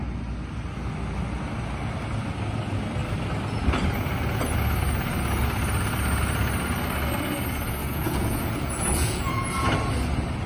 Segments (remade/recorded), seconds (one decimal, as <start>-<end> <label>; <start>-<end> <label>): 0.0-7.8 recorded; 7.8-9.7 remade; 9.7-10.5 recorded